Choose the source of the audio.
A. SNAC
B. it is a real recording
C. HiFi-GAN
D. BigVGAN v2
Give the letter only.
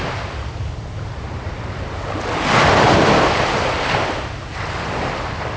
B